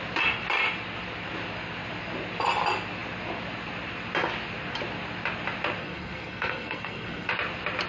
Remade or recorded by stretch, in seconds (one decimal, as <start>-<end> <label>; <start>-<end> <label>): 0.0-5.8 recorded; 5.8-7.3 remade; 7.3-7.9 recorded